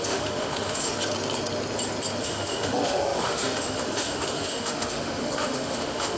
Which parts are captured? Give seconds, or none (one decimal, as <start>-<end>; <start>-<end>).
0.9-2.2